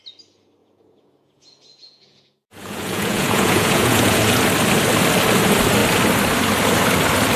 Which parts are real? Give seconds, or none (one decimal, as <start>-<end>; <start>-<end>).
0.0-0.6; 4.4-7.4